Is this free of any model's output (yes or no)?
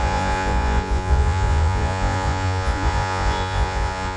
no